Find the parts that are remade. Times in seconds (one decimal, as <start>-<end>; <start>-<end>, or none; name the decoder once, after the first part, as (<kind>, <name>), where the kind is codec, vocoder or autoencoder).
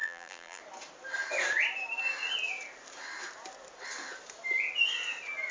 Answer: 0.0-0.6 (vocoder, BigVGAN v2)